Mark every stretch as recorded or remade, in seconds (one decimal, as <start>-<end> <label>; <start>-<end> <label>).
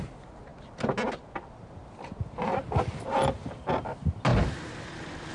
0.0-4.3 recorded; 4.3-5.3 remade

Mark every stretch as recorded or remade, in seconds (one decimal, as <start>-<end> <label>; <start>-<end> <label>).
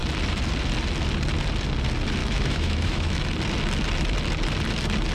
0.0-2.2 recorded; 2.2-3.2 remade; 3.2-5.1 recorded